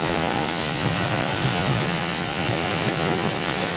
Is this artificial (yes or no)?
yes